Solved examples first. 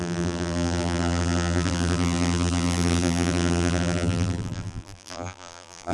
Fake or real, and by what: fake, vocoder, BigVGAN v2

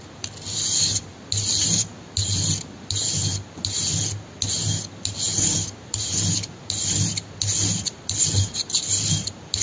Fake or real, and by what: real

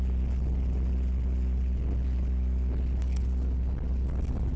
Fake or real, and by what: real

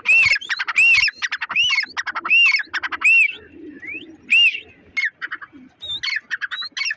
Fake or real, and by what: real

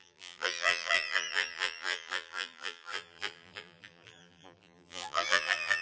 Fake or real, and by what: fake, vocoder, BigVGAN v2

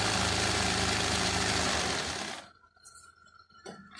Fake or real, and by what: real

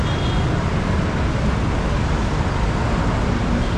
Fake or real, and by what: real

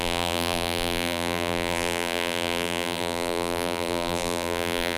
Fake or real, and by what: fake, vocoder, BigVGAN v2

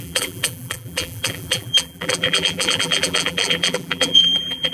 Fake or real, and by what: fake, vocoder, BigVGAN v2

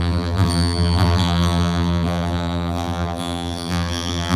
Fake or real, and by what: fake, vocoder, BigVGAN v2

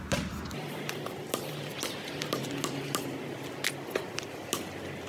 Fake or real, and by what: fake, vocoder, BigVGAN v2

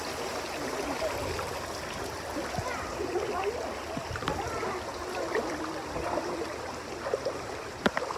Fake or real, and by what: real